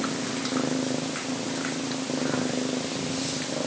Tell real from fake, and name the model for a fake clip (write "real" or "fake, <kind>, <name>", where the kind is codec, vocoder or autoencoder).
real